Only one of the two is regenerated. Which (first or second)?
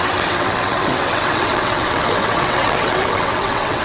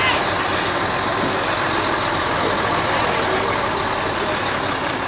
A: first